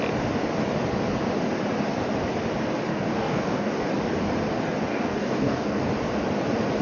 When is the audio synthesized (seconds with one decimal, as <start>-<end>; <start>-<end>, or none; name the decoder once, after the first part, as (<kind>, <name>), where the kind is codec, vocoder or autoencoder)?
2.9-3.8 (codec, DAC); 4.9-5.8